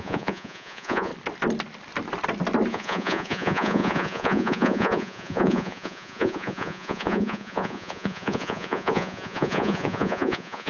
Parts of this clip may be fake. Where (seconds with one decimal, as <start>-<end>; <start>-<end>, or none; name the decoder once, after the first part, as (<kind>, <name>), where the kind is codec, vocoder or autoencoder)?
0.0-1.1 (vocoder, Vocos); 2.7-10.7